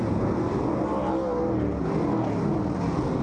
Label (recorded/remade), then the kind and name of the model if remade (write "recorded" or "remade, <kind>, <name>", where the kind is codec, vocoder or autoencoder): recorded